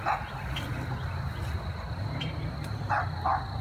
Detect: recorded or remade recorded